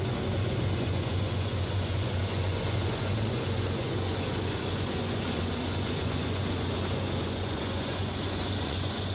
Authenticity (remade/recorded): remade